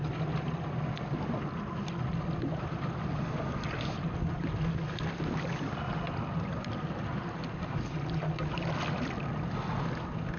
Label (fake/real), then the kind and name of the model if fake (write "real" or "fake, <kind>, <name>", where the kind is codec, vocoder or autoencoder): real